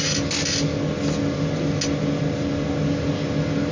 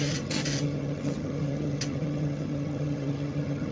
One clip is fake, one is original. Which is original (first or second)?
first